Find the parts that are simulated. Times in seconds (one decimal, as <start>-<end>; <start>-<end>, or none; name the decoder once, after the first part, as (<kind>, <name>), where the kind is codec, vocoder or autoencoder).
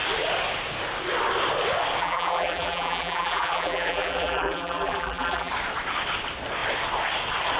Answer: 2.0-5.5 (vocoder, BigVGAN v2)